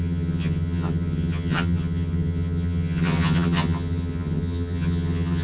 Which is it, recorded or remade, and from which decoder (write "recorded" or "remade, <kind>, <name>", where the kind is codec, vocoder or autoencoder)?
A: remade, vocoder, HiFi-GAN